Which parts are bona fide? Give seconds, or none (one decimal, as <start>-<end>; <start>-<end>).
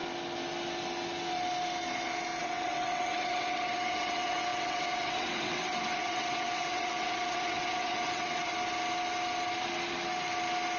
0.0-2.4; 8.5-10.8